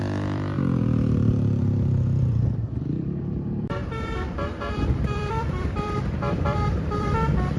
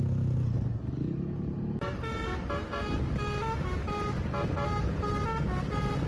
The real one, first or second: second